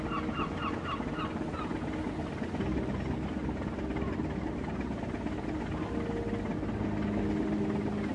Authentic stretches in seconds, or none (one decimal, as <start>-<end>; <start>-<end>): 0.0-8.1